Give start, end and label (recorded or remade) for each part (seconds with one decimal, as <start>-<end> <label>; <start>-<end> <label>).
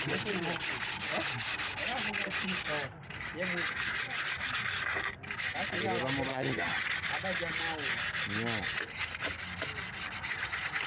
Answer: 0.0-6.3 recorded; 6.3-6.8 remade; 6.8-10.9 recorded